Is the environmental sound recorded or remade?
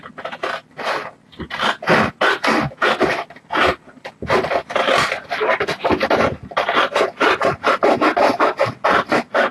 recorded